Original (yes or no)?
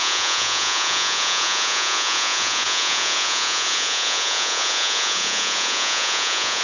no